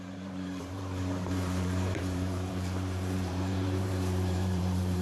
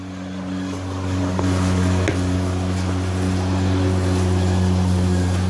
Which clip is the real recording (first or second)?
second